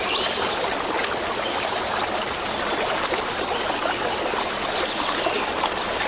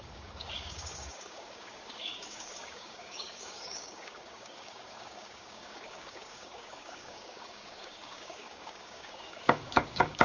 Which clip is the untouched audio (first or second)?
first